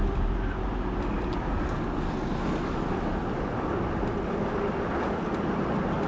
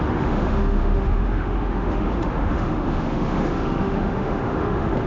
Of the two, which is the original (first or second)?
first